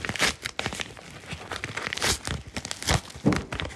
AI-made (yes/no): no